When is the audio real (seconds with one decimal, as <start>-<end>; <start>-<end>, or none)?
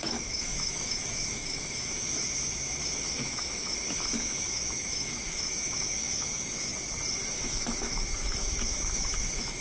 6.7-7.3